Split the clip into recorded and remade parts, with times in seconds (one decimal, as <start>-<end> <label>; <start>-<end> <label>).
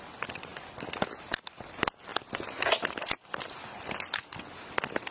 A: 0.0-5.1 recorded